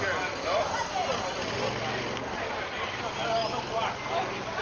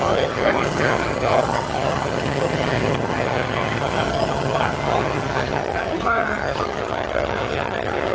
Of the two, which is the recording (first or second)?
first